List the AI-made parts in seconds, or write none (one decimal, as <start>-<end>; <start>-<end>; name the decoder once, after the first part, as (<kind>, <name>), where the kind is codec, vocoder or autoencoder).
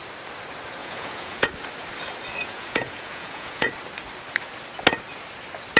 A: 0.8-1.5 (vocoder, Vocos); 2.4-3.7